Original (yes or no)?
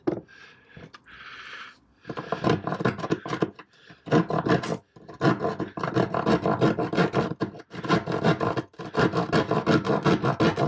yes